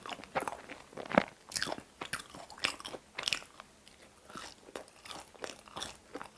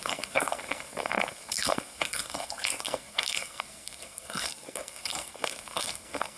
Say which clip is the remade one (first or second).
second